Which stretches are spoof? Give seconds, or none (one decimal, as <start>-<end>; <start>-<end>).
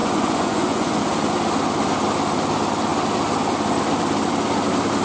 0.0-1.0